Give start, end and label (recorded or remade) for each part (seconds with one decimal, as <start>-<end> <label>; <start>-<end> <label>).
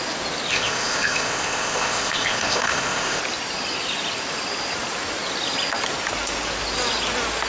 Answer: 0.0-0.5 recorded; 0.5-3.2 remade; 3.2-7.5 recorded